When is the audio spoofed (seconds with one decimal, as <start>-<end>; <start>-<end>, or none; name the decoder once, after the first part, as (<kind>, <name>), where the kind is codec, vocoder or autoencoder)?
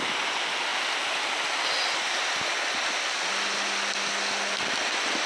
none